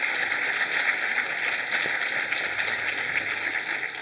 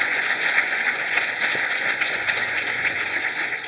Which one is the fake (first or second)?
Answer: second